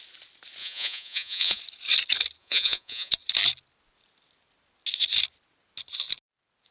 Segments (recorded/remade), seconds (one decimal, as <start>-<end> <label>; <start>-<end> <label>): 0.0-0.6 recorded; 0.6-1.6 remade; 1.6-2.4 recorded; 2.4-3.1 remade; 3.1-6.7 recorded